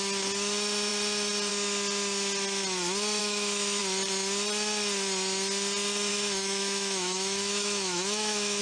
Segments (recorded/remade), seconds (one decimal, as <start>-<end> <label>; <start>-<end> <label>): 0.0-3.2 recorded; 3.2-3.8 remade; 3.8-6.1 recorded; 6.1-8.6 remade